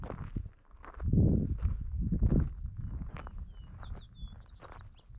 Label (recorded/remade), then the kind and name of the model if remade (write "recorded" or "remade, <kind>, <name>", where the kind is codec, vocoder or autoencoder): recorded